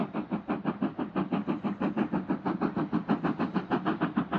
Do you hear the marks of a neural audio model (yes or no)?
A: no